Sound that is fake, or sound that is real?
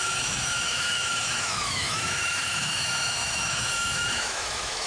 fake